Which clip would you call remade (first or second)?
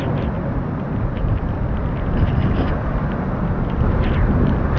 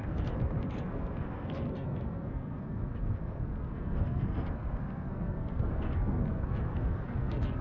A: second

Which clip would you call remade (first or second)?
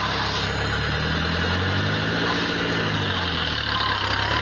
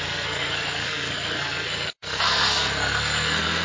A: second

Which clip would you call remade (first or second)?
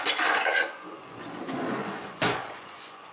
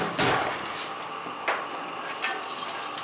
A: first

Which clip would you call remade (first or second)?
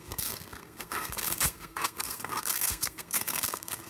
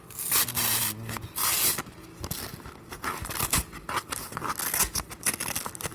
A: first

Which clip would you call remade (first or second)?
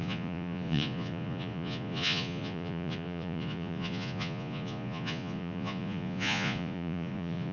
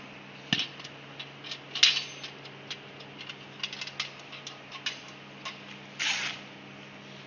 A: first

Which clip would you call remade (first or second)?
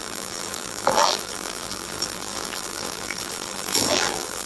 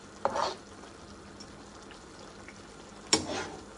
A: first